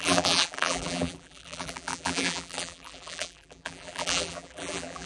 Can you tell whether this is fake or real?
fake